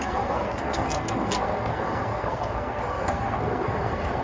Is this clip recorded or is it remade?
remade